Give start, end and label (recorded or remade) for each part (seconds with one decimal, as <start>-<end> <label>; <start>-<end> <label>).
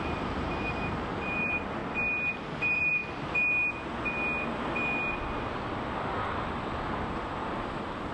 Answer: 0.0-1.8 remade; 1.8-2.6 recorded; 2.6-3.0 remade; 3.0-8.1 recorded